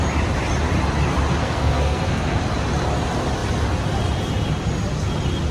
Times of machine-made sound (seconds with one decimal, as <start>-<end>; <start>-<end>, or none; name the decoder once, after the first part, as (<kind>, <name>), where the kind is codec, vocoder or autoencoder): 1.4-2.4 (codec, SNAC)